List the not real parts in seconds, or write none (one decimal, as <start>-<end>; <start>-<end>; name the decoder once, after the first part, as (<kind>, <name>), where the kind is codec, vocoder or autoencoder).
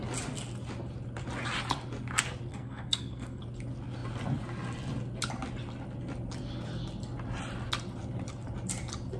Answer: 2.5-3.4 (codec, SNAC)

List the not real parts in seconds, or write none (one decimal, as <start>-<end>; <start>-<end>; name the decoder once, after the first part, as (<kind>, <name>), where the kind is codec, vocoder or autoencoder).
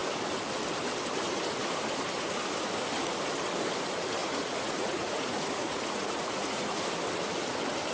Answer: 4.2-6.8 (vocoder, Vocos)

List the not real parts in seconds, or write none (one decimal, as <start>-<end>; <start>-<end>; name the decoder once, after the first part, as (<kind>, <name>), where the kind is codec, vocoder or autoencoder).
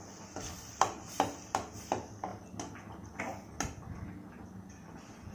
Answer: none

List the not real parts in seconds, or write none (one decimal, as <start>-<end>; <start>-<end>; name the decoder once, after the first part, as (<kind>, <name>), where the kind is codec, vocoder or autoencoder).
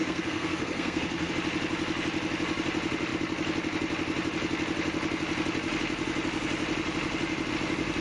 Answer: 0.0-1.3 (codec, SNAC)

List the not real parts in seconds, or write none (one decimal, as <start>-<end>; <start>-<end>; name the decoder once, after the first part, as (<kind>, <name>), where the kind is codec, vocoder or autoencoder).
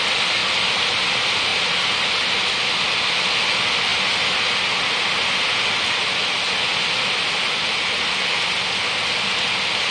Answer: none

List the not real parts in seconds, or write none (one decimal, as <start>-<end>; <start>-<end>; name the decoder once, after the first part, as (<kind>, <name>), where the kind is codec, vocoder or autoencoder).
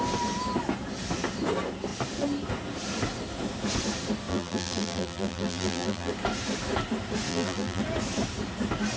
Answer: 4.3-6.1 (vocoder, BigVGAN v2); 7.3-7.8